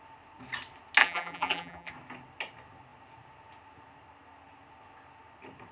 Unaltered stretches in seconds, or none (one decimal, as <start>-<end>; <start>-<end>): 0.0-1.0; 1.9-5.7